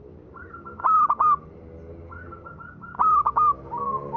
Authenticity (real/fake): real